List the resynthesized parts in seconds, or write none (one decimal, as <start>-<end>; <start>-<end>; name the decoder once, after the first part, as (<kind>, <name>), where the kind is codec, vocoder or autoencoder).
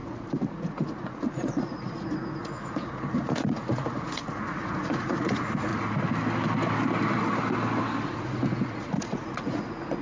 0.0-5.7 (vocoder, Vocos); 8.0-10.0